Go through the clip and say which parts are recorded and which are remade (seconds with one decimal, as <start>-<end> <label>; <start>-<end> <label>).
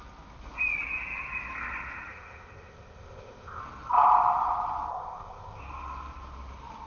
0.0-2.1 recorded; 2.1-3.6 remade; 3.6-4.9 recorded; 4.9-5.6 remade; 5.6-6.9 recorded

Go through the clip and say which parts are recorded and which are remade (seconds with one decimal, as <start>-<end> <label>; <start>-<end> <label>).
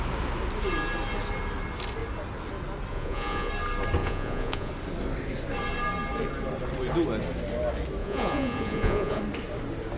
0.0-2.9 recorded; 2.9-3.5 remade; 3.5-4.0 recorded; 4.0-4.7 remade; 4.7-8.0 recorded; 8.0-9.2 remade; 9.2-10.0 recorded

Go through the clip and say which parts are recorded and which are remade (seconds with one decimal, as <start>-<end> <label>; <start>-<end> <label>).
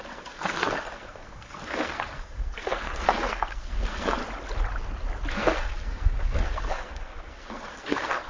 0.0-4.2 remade; 4.2-5.3 recorded; 5.3-8.3 remade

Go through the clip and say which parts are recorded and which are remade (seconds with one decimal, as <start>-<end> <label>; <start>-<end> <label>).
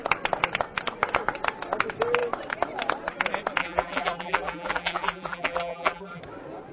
0.0-3.6 recorded; 3.6-6.2 remade; 6.2-6.7 recorded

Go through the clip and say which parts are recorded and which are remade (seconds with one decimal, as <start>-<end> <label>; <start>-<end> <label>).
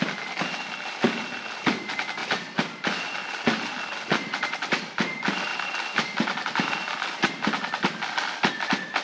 0.0-9.0 recorded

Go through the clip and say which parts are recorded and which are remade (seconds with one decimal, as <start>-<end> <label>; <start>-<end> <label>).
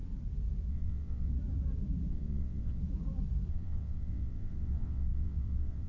0.0-0.7 recorded; 0.7-1.3 remade; 1.3-2.1 recorded; 2.1-2.8 remade; 2.8-3.5 recorded; 3.5-5.9 remade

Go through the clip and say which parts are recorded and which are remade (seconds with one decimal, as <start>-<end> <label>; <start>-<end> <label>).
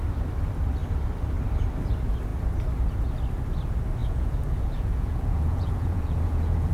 0.0-4.0 recorded; 4.0-6.7 remade